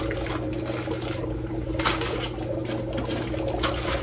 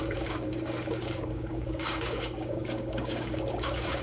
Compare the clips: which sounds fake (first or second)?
second